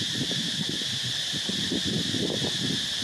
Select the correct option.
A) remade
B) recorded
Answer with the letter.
B